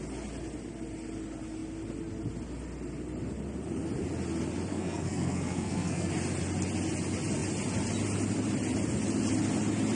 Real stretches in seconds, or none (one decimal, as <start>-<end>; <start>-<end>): 0.0-4.7; 6.1-9.9